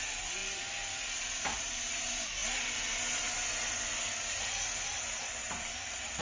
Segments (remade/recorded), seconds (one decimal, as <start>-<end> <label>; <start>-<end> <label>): 0.0-6.2 recorded